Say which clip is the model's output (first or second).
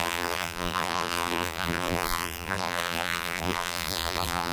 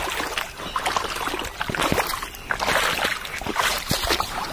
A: first